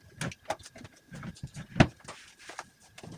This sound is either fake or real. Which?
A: real